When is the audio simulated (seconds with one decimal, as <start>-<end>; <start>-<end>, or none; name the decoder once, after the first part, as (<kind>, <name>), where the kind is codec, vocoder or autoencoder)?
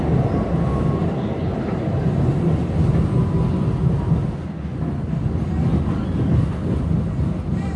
none